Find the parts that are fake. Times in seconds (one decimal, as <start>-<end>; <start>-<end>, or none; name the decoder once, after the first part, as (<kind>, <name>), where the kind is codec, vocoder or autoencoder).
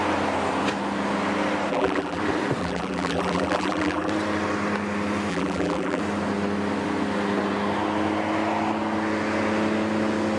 1.7-2.2 (vocoder, BigVGAN v2); 2.6-4.1; 5.3-6.0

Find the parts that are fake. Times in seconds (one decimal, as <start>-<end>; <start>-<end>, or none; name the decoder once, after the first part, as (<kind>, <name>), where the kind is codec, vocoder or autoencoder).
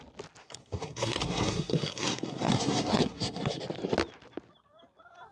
0.4-3.6 (codec, SNAC)